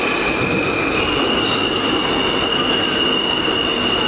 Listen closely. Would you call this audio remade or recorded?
recorded